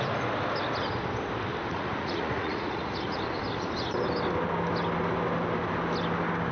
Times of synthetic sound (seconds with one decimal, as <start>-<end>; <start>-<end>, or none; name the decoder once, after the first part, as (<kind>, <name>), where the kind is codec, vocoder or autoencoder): 1.7-3.2 (vocoder, Vocos)